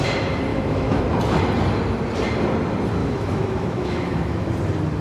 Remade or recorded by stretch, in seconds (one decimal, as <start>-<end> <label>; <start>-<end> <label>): 0.0-0.5 recorded; 0.5-1.0 remade; 1.0-3.0 recorded; 3.0-4.5 remade; 4.5-5.0 recorded